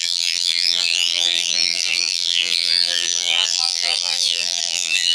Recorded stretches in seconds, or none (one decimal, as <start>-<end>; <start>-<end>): none